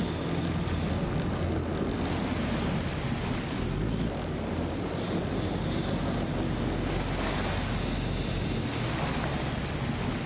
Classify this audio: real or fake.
real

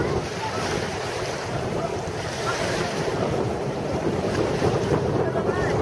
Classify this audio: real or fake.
fake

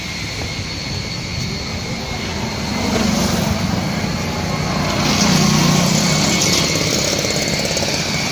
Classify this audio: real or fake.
real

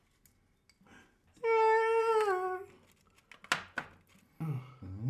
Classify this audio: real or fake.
real